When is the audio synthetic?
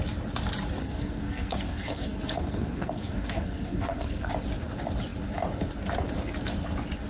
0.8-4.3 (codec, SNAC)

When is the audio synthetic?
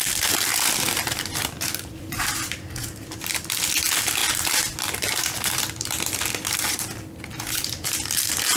0.0-4.2 (vocoder, BigVGAN v2); 4.9-8.6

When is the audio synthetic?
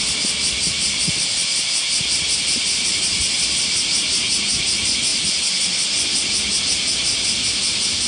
none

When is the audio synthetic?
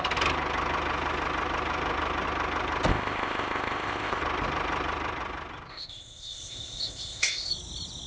2.9-4.2 (codec, ZipCodec); 5.7-7.5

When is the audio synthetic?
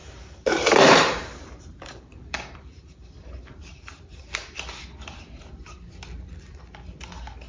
0.0-4.2 (vocoder, BigVGAN v2)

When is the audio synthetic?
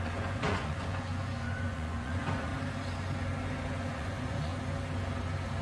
0.0-2.5 (vocoder, Vocos); 3.7-4.5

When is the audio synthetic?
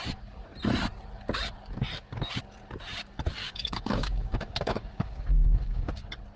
3.4-5.9 (codec, DAC)